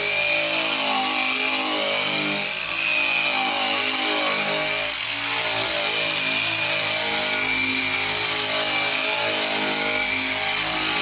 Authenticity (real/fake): real